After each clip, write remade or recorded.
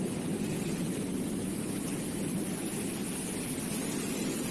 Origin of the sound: recorded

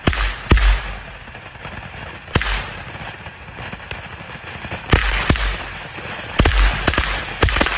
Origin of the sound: recorded